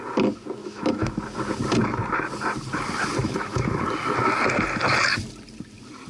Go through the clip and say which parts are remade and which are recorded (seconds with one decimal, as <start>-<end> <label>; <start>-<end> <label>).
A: 0.0-0.6 recorded; 0.6-1.2 remade; 1.2-3.2 recorded; 3.2-3.8 remade; 3.8-6.1 recorded